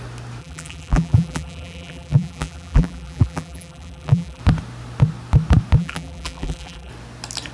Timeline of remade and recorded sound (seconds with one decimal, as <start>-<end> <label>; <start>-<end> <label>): 0.0-0.4 recorded; 0.4-4.4 remade; 4.4-5.8 recorded; 5.8-6.9 remade; 6.9-7.5 recorded